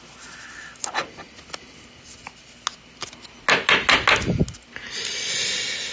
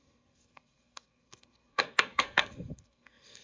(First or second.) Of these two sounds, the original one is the first